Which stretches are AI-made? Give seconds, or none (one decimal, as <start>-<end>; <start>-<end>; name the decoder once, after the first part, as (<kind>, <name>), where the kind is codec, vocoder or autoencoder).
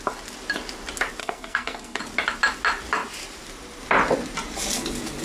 1.2-2.0 (codec, SNAC)